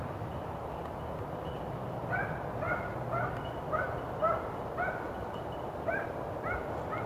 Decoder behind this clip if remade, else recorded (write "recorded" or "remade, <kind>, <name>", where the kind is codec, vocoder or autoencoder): recorded